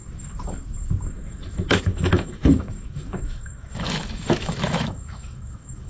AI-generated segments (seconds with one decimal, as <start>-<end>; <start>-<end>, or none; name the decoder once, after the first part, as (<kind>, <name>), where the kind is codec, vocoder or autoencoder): 1.1-5.9 (autoencoder, DAC-VAE)